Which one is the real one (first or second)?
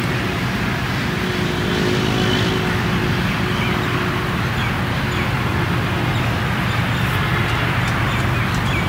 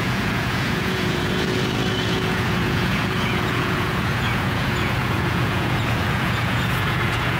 first